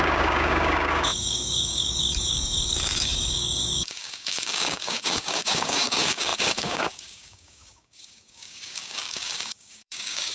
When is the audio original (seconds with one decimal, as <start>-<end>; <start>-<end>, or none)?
none